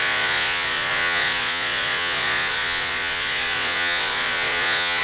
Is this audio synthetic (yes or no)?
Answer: yes